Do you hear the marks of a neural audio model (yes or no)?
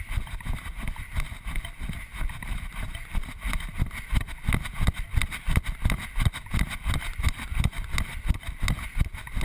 no